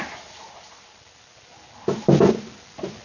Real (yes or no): yes